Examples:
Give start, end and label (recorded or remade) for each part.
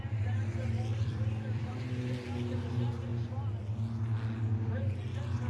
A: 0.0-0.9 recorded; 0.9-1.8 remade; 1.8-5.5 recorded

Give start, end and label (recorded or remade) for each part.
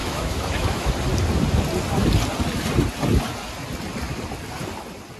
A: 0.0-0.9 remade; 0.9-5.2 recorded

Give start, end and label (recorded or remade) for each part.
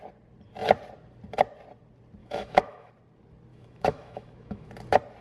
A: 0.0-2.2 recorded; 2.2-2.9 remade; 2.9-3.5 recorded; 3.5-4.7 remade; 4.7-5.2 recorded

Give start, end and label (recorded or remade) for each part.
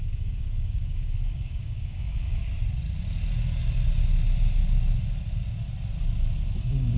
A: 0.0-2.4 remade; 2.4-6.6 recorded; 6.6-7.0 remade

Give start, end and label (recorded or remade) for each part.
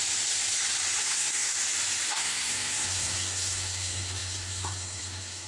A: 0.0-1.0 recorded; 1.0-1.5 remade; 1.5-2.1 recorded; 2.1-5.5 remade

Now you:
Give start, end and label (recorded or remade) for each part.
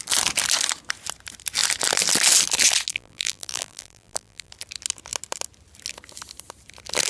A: 0.0-2.9 recorded; 2.9-4.5 remade; 4.5-7.1 recorded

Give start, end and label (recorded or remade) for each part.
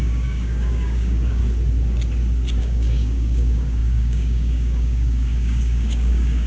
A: 0.0-1.4 remade; 1.4-2.6 recorded; 2.6-6.5 remade